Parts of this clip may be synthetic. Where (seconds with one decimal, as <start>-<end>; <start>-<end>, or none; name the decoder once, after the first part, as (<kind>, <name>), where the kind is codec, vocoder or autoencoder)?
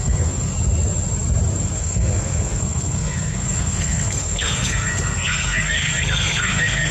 0.0-0.5 (codec, SNAC); 1.6-6.9